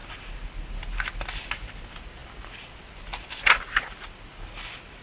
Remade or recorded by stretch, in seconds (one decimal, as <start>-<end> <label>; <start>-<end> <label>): 0.0-5.0 recorded